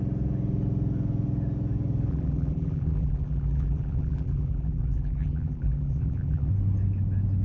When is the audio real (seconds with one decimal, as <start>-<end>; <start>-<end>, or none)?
0.0-2.1; 6.5-7.4